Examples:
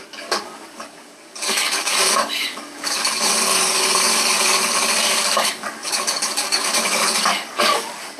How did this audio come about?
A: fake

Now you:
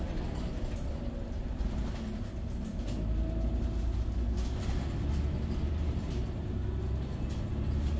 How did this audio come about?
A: real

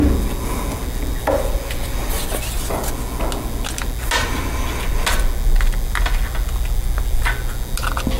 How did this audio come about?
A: real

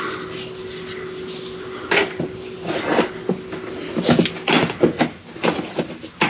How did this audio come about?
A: real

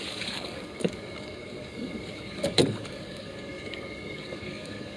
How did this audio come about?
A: fake